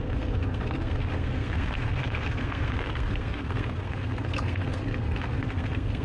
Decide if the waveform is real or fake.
fake